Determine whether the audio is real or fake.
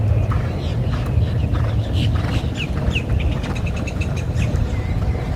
real